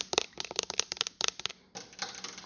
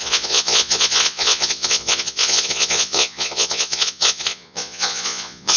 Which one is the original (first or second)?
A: first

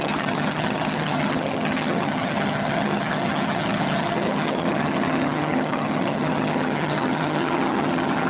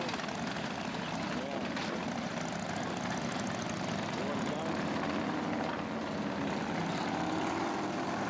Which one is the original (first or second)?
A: second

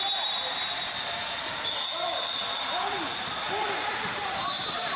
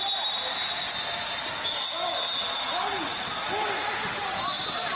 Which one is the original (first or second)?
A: second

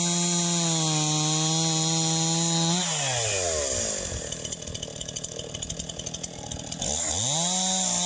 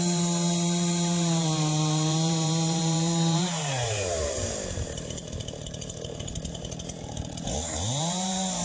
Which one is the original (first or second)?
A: first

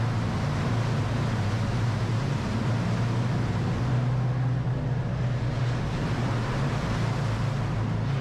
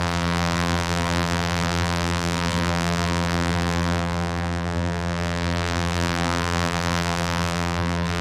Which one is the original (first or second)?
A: first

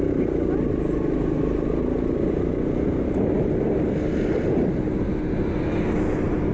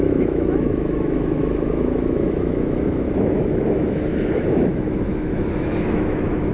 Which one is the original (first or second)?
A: first